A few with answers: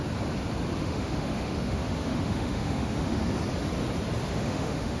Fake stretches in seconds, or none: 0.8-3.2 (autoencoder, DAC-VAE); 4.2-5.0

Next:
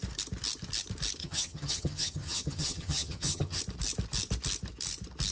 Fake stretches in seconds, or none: 1.2-3.6 (vocoder, HiFi-GAN)

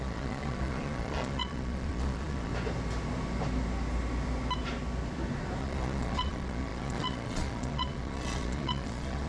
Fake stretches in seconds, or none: 0.0-2.5 (vocoder, Vocos); 5.6-9.3

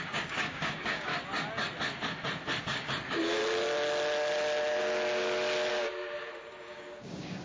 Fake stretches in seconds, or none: 0.0-1.1 (codec, DAC); 2.6-3.4; 5.7-7.4